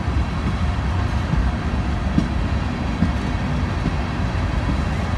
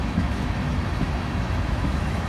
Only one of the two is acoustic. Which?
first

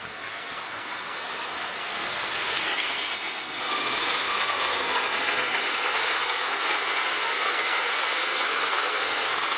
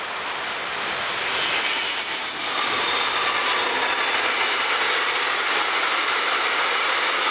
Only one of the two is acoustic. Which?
second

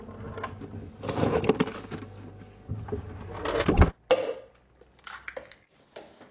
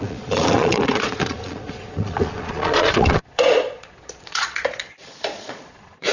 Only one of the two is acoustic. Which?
first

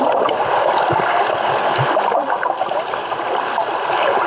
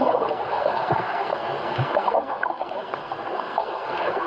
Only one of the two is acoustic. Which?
first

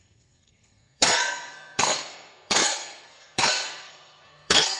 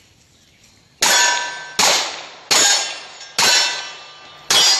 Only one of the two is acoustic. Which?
second